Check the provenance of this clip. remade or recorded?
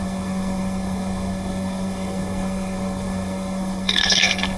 remade